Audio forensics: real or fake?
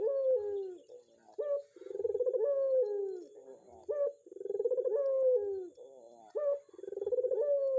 real